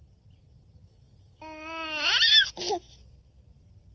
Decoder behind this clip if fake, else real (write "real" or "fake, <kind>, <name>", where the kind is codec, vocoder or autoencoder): real